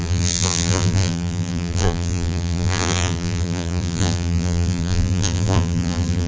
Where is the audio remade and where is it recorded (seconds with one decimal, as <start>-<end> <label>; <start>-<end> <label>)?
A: 0.0-6.3 remade